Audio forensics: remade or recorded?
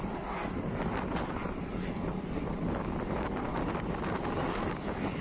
recorded